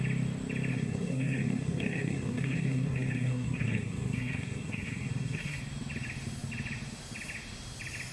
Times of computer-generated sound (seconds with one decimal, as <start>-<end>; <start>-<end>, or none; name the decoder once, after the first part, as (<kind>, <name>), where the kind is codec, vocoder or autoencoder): 0.7-5.6 (codec, SNAC)